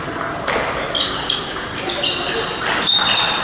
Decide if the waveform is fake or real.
real